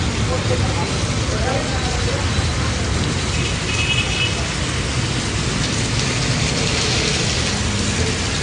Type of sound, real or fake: real